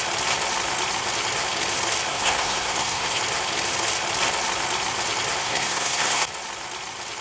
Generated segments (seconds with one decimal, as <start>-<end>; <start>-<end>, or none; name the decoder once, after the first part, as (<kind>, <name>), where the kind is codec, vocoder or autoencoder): 2.1-3.2 (codec, SNAC); 5.4-6.3